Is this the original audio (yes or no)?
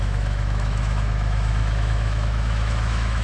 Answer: no